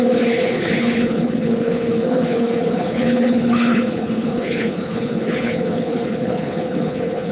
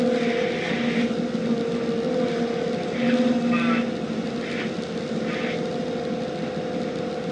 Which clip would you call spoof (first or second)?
first